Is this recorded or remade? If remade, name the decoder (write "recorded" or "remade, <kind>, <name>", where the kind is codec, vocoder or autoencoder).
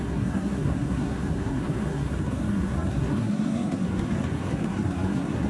remade, codec, SNAC